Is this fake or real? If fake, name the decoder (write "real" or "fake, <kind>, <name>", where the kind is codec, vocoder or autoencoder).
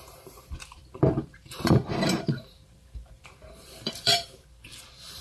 fake, vocoder, BigVGAN v2